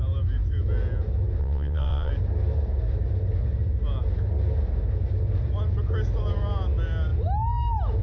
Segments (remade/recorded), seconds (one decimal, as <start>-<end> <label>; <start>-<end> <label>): 0.0-1.4 recorded; 1.4-2.1 remade; 2.1-8.0 recorded